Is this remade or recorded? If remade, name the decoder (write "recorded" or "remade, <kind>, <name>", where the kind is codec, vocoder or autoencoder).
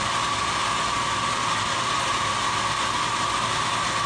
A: recorded